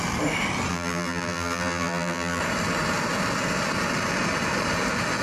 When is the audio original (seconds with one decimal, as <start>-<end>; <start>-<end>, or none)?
0.0-0.7; 2.4-5.2